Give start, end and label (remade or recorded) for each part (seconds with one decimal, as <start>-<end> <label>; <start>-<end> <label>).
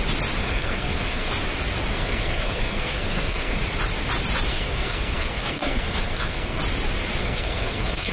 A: 0.0-0.4 recorded; 0.4-1.3 remade; 1.3-1.9 recorded; 1.9-3.6 remade; 3.6-4.5 recorded; 4.5-6.6 remade; 6.6-7.2 recorded; 7.2-8.1 remade